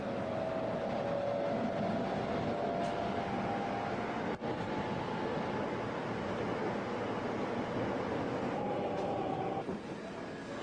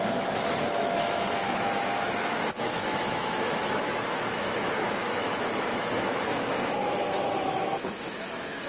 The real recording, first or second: first